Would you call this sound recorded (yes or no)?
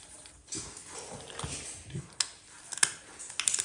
yes